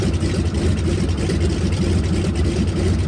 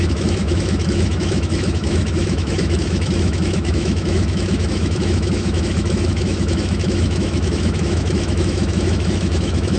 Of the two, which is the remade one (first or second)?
second